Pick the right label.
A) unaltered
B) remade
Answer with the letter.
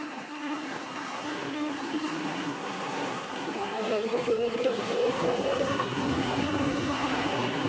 B